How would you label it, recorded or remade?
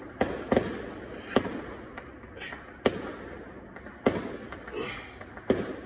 recorded